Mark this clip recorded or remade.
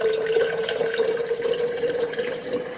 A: remade